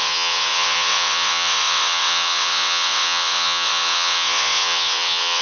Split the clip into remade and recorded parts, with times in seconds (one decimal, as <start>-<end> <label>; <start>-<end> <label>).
0.0-5.4 remade